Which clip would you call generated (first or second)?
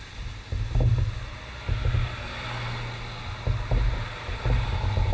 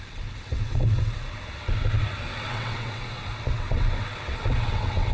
second